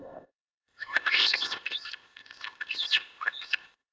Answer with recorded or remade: remade